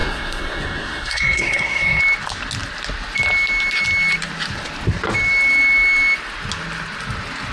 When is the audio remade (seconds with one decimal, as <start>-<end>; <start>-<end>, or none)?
0.0-2.0